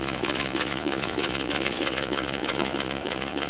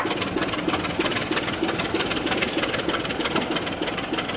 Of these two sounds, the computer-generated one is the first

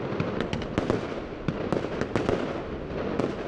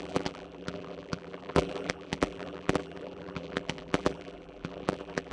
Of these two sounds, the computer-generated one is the second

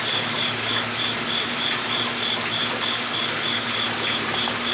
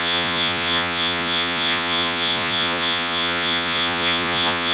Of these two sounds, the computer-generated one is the second